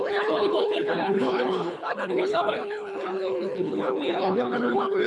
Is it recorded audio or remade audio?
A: remade